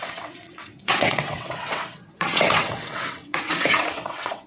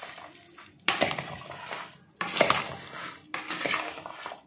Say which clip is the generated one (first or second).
first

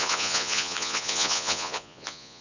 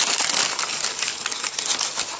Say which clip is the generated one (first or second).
first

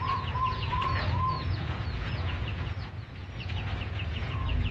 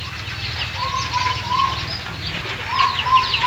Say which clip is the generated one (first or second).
first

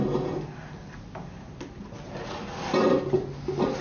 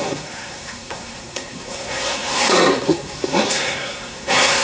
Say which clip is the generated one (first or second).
second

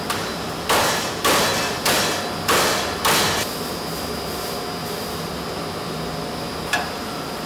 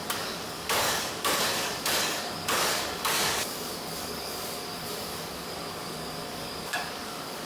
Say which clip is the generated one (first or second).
second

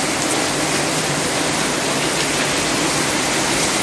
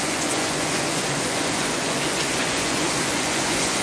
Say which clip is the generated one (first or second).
second